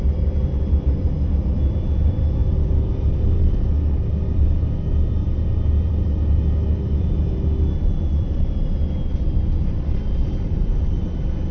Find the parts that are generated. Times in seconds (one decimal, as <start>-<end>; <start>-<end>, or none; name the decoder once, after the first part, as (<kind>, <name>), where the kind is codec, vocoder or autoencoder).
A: 0.0-11.5 (vocoder, BigVGAN v2)